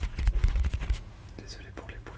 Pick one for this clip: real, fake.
fake